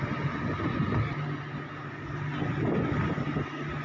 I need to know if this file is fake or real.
real